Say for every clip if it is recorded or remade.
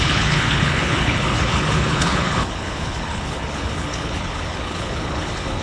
remade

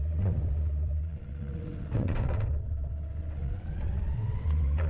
remade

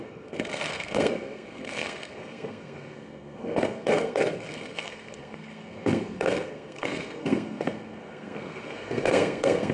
remade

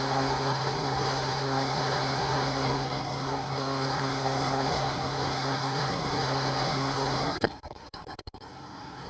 remade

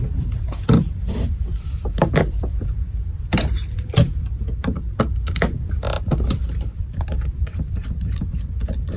remade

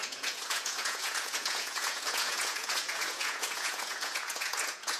remade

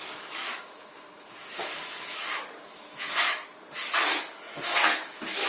remade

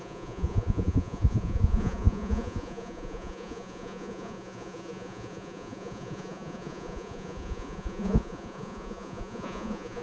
remade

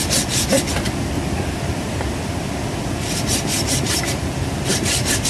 recorded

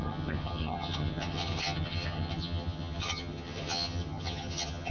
remade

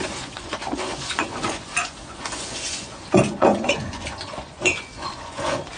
remade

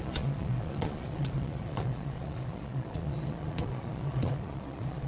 remade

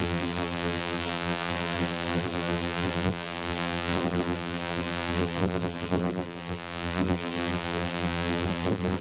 remade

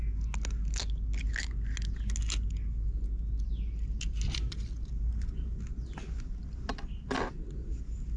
recorded